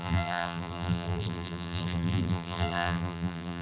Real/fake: fake